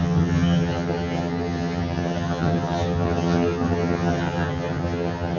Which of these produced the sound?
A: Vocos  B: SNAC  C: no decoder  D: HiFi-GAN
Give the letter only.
D